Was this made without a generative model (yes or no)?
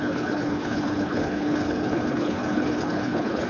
no